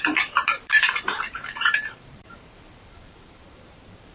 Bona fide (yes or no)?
no